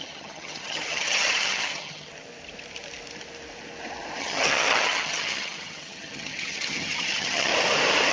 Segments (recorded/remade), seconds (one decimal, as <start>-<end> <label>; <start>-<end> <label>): 0.0-2.1 remade; 2.1-4.2 recorded; 4.2-7.5 remade; 7.5-8.1 recorded